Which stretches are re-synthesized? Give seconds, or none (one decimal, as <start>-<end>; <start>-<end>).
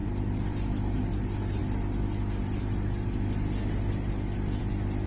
none